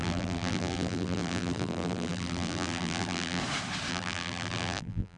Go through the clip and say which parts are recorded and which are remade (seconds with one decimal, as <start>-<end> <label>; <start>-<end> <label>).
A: 0.0-3.4 remade; 3.4-3.9 recorded; 3.9-5.2 remade